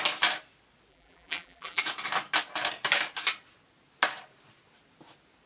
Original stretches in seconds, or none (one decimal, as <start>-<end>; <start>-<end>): 0.0-0.9; 1.8-5.5